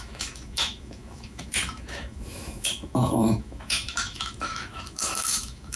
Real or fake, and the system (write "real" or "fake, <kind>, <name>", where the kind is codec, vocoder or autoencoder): fake, autoencoder, DAC-VAE